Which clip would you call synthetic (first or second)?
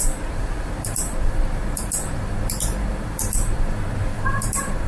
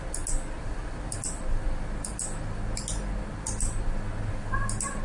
first